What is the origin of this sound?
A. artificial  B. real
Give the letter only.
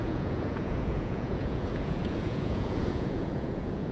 A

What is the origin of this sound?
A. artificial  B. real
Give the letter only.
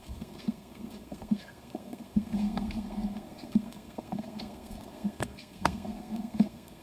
A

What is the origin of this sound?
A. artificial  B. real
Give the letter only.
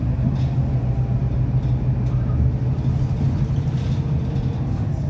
B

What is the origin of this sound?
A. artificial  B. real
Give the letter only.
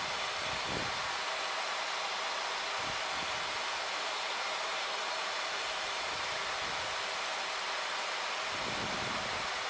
A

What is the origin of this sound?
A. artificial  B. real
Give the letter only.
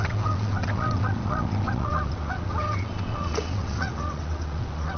A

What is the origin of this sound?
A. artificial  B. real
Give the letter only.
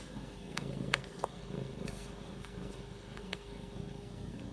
A